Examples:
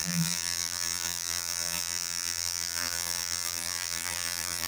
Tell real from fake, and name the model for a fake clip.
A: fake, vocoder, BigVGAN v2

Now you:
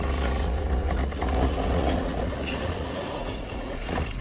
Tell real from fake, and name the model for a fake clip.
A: fake, vocoder, Vocos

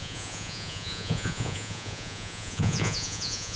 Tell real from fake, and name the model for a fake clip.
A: fake, vocoder, Vocos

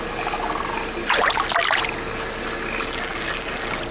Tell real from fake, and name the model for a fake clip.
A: real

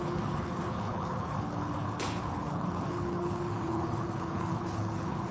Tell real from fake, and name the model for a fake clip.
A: fake, codec, HILCodec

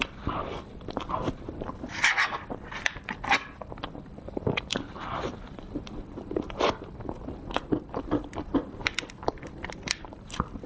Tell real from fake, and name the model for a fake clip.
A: real